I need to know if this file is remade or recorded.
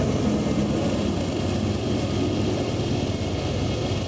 recorded